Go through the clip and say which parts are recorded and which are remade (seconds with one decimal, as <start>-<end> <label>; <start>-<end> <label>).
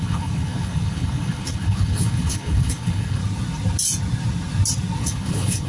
0.0-3.2 remade; 3.2-5.0 recorded; 5.0-5.7 remade